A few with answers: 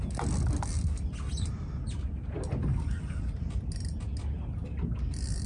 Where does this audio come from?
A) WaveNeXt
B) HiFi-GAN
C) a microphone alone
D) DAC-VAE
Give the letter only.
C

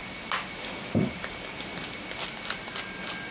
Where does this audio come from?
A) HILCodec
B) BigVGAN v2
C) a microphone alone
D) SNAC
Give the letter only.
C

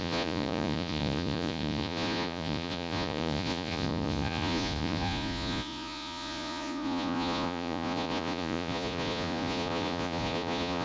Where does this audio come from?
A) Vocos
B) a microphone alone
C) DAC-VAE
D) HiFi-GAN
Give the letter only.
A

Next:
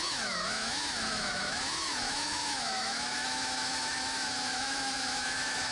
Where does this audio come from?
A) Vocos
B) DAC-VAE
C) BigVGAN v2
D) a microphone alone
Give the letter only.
B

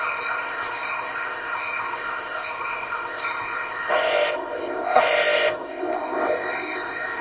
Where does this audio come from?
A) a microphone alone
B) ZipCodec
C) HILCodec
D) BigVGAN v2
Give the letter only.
B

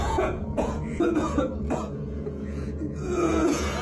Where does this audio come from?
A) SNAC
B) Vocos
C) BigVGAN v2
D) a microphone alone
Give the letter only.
B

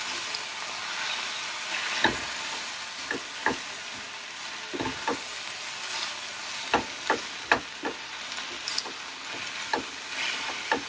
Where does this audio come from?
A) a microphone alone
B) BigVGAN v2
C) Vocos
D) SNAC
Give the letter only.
A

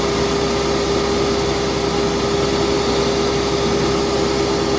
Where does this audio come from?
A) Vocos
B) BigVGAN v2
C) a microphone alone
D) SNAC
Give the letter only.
C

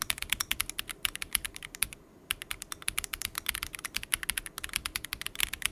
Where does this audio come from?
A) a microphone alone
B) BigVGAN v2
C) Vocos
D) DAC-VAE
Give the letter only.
A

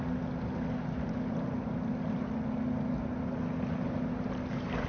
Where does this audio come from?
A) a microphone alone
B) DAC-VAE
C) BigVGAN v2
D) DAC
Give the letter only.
A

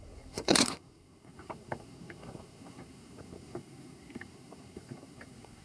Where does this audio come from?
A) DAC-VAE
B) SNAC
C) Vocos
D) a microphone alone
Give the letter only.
B